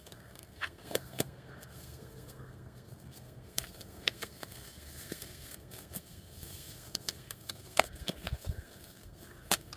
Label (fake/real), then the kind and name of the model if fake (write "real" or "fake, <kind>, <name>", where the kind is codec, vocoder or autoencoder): fake, codec, SNAC